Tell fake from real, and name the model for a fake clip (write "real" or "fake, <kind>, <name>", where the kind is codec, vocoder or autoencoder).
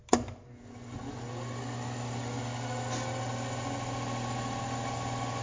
real